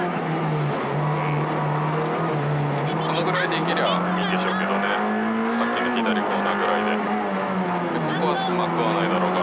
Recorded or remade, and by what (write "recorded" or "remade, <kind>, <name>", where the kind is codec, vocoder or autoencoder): recorded